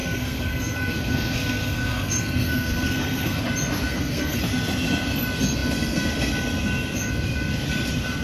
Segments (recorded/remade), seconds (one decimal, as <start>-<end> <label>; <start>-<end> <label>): 0.0-3.4 remade; 3.4-3.9 recorded; 3.9-4.4 remade; 4.4-8.2 recorded